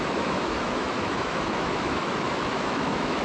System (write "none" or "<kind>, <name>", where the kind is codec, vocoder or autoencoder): autoencoder, DAC-VAE